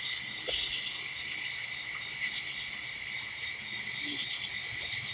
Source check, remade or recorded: recorded